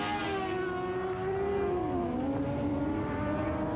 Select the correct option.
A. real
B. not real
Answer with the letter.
A